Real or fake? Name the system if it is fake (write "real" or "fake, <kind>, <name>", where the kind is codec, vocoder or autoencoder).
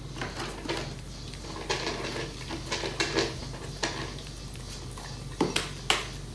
real